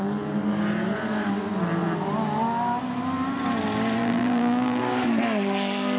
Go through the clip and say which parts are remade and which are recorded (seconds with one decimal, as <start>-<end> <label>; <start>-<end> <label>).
0.0-4.0 recorded; 4.0-4.8 remade; 4.8-6.0 recorded